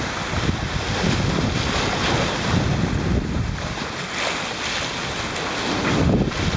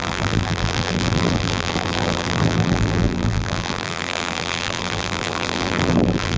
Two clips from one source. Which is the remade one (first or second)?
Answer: second